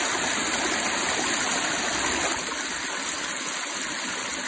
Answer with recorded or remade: recorded